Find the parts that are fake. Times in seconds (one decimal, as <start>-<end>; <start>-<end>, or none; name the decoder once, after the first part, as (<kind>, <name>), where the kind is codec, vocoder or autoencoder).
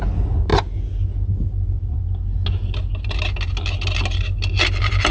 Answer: none